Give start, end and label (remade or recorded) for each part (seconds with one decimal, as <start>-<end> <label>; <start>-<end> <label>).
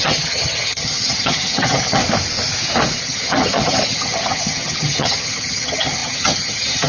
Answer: 0.0-2.0 remade; 2.0-3.0 recorded; 3.0-6.9 remade